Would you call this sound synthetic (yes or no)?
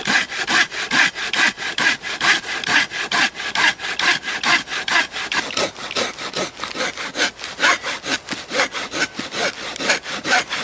no